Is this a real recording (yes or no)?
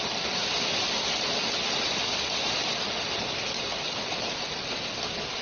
yes